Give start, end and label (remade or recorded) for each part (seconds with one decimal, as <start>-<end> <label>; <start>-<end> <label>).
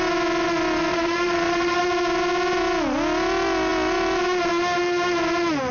0.0-0.9 recorded; 0.9-1.8 remade; 1.8-5.7 recorded